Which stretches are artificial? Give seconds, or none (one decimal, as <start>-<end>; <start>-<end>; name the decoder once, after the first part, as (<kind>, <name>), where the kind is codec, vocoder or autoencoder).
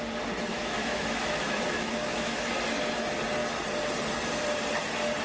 0.5-2.5 (autoencoder, DAC-VAE)